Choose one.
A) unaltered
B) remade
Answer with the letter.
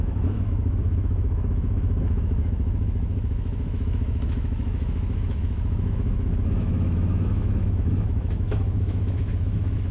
B